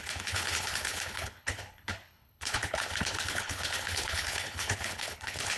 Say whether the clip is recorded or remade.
remade